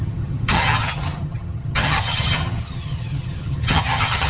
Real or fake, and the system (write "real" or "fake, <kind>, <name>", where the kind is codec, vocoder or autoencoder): fake, vocoder, HiFi-GAN